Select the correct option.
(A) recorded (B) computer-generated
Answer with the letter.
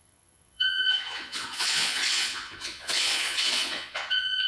B